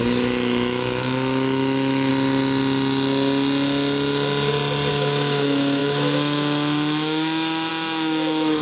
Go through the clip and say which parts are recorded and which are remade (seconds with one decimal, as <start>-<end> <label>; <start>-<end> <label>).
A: 0.0-2.1 remade; 2.1-4.9 recorded; 4.9-8.6 remade